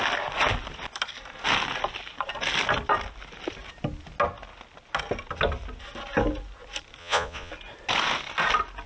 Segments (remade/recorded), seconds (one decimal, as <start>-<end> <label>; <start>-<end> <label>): 0.0-7.0 recorded; 7.0-7.5 remade; 7.5-8.9 recorded